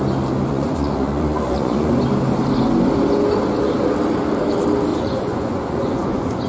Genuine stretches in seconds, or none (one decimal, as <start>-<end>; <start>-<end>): 0.0-0.5; 1.9-4.9